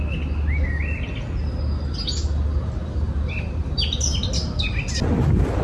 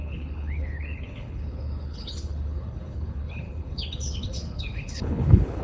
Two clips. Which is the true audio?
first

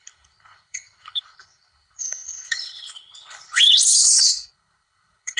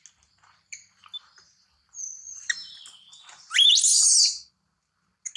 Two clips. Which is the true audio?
second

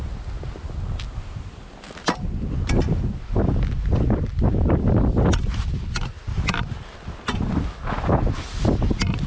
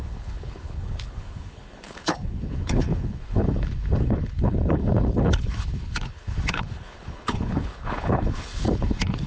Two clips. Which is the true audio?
first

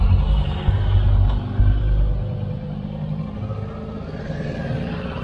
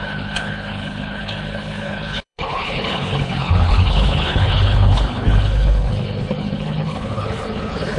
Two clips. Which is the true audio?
first